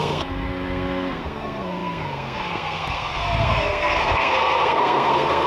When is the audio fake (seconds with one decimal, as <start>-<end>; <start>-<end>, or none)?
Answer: 0.0-5.5